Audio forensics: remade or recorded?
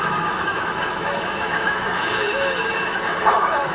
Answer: remade